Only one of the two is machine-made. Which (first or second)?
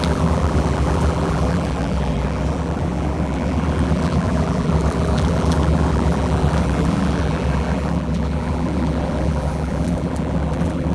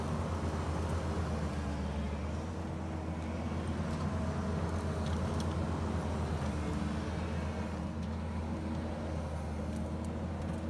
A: first